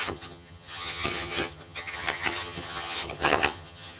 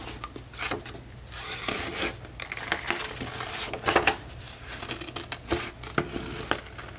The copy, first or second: first